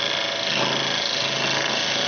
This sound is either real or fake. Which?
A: real